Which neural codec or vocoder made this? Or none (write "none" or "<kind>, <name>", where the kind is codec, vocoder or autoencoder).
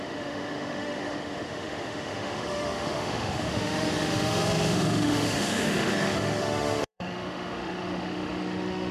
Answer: autoencoder, DAC-VAE